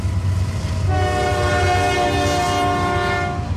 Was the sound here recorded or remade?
recorded